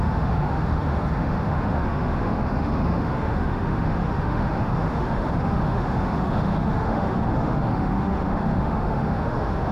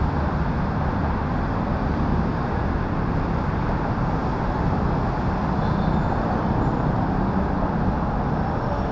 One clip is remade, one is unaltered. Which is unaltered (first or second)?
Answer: second